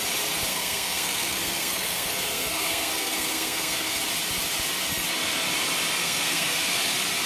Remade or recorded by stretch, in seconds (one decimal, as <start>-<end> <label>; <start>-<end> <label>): 0.0-0.5 recorded; 0.5-4.0 remade; 4.0-6.0 recorded; 6.0-6.8 remade; 6.8-7.3 recorded